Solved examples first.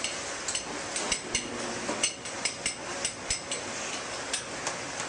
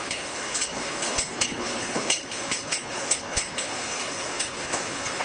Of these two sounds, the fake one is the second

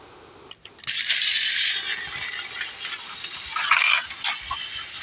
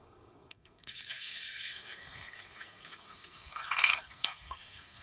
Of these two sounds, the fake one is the second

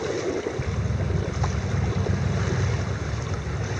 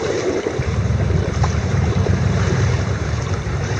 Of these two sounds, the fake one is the second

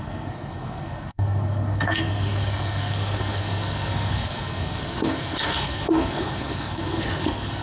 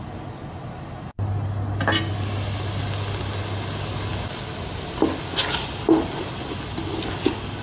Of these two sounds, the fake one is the first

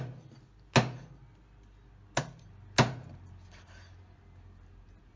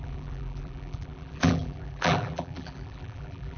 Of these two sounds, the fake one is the second